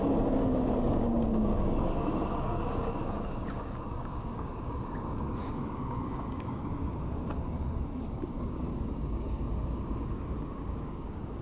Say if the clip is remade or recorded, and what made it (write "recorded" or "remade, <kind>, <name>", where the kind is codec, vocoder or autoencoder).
remade, codec, DAC